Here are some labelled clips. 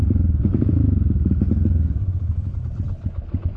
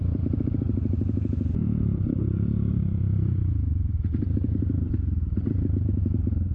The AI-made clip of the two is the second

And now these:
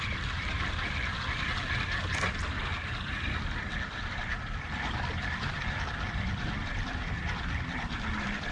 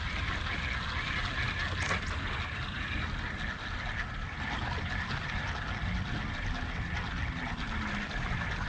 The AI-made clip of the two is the first